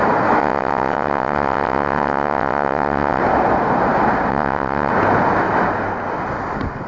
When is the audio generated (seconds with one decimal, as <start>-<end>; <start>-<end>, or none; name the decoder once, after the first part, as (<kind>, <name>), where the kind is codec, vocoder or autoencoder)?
0.4-3.2 (vocoder, WaveNeXt); 4.3-4.9

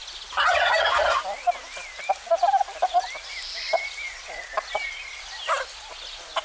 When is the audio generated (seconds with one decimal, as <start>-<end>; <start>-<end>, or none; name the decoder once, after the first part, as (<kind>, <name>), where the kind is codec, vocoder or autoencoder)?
none

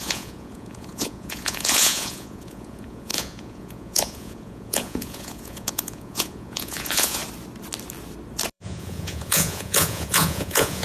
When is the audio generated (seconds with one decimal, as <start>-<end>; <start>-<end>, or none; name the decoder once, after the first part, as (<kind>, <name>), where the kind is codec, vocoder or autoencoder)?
0.0-7.2 (vocoder, Vocos); 8.5-10.8

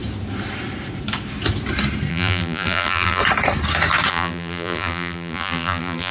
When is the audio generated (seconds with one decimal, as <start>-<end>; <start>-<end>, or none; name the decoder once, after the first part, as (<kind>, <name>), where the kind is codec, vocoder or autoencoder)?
2.1-3.2 (vocoder, BigVGAN v2); 4.1-6.1

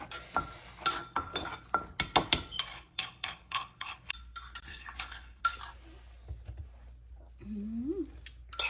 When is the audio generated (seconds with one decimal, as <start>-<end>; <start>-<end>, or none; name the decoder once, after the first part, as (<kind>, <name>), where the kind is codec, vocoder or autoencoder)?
2.7-4.1 (codec, HILCodec); 4.7-5.4

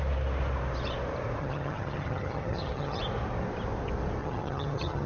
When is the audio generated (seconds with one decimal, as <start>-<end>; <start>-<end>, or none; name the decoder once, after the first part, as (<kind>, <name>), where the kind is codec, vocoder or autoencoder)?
1.4-3.0 (vocoder, HiFi-GAN); 4.2-5.1

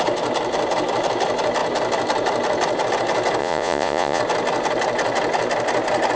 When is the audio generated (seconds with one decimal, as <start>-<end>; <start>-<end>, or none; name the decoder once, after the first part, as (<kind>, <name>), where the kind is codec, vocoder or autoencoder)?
3.4-4.2 (vocoder, Vocos)

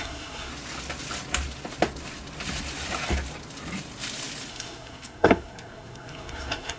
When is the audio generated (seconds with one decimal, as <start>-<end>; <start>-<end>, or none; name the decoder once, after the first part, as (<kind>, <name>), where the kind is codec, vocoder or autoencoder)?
0.0-0.5 (codec, SNAC); 4.5-6.8